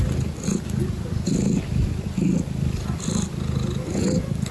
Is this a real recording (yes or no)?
yes